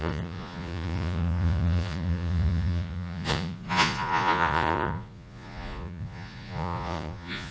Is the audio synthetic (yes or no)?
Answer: yes